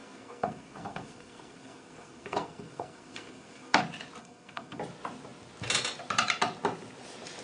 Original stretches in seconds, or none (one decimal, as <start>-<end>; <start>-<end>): 3.8-4.2; 4.8-7.4